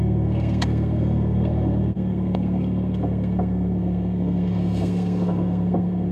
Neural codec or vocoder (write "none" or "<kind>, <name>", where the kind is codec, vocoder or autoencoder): codec, SNAC